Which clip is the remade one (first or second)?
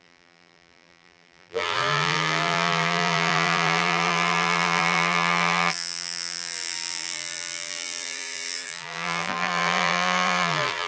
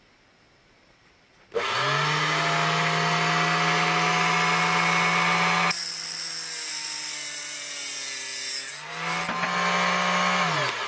first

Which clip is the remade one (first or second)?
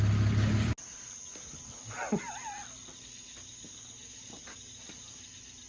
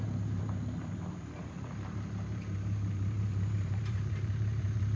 second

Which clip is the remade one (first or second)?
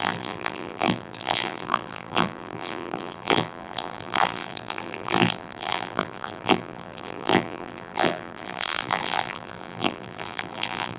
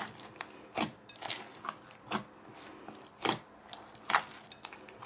first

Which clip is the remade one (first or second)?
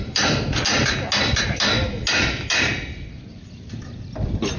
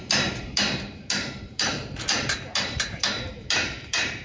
second